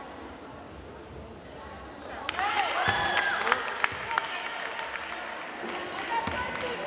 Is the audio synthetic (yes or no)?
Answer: no